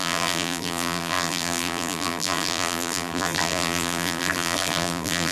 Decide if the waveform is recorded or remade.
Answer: remade